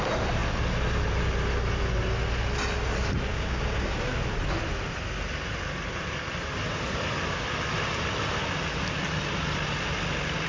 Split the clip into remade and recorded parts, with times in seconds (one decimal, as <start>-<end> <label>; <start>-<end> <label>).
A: 0.0-3.3 recorded; 3.3-3.9 remade; 3.9-10.5 recorded